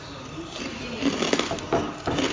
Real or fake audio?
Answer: real